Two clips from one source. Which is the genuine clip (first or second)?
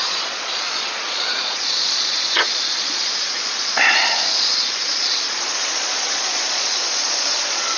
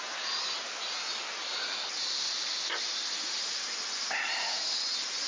second